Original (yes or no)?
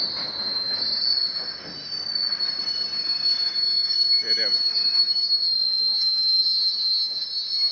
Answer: yes